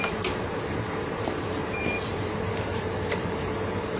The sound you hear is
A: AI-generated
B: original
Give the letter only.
A